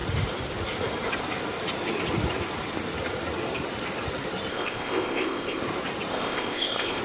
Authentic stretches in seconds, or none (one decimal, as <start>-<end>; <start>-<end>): 0.0-4.5; 5.6-6.1